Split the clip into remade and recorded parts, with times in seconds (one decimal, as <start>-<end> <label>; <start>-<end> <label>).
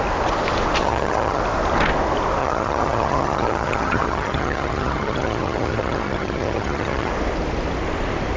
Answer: 0.0-0.8 recorded; 0.8-1.4 remade; 1.4-2.4 recorded; 2.4-7.1 remade; 7.1-8.4 recorded